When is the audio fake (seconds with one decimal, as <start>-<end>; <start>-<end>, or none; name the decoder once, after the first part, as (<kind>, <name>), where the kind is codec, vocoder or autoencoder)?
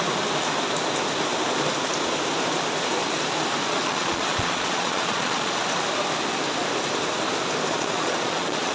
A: 3.6-5.6 (vocoder, Vocos); 7.7-8.7